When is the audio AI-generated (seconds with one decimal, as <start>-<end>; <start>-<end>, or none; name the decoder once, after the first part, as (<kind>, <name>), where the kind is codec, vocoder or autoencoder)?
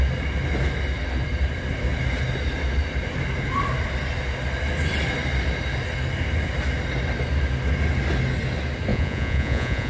8.9-9.9 (vocoder, Vocos)